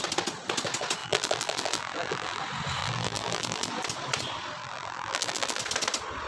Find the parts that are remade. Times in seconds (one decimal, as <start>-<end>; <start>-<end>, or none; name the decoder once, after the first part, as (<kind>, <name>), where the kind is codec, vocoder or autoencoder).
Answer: 1.0-2.4 (vocoder, BigVGAN v2); 2.8-3.7; 4.6-5.6